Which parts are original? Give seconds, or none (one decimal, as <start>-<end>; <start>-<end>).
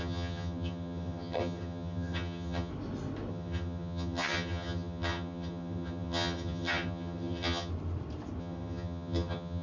2.7-3.3; 7.7-8.4